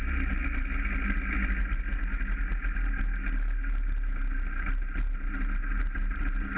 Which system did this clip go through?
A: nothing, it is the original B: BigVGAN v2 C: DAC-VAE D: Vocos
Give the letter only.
A